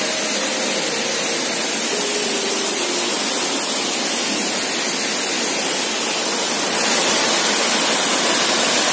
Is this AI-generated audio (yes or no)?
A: no